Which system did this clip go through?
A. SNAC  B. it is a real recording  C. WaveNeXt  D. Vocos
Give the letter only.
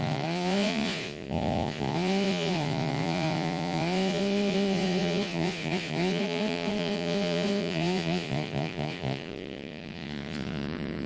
D